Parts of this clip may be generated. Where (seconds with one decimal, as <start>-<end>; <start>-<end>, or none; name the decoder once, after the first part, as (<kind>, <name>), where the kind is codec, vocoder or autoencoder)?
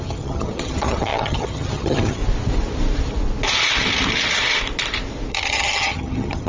0.0-2.2 (vocoder, HiFi-GAN); 5.3-6.5